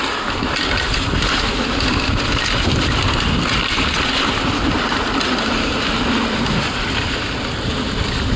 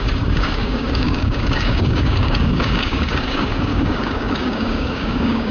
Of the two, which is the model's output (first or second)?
second